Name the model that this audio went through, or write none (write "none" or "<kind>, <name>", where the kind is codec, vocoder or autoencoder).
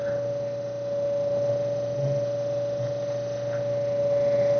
autoencoder, DAC-VAE